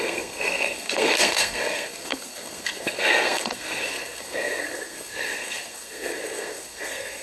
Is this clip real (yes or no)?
no